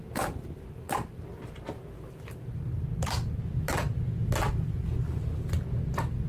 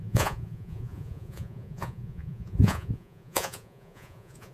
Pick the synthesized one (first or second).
second